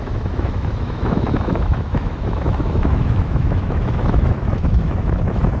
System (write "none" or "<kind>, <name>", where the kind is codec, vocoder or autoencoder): autoencoder, DAC-VAE